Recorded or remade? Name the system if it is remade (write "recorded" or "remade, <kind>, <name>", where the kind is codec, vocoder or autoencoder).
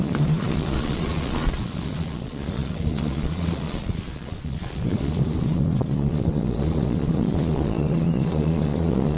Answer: remade, vocoder, Vocos